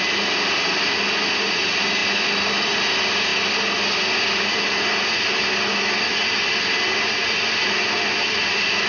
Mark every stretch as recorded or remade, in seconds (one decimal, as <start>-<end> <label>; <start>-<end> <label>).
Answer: 0.0-8.9 recorded